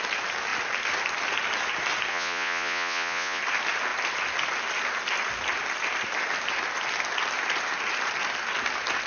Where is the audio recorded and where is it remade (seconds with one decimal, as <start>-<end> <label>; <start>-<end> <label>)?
0.0-2.1 recorded; 2.1-3.4 remade; 3.4-9.1 recorded